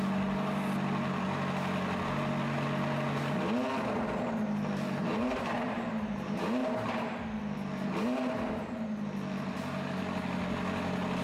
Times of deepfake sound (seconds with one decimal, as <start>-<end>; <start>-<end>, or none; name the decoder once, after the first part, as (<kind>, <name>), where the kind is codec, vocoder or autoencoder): 5.0-7.1 (vocoder, BigVGAN v2)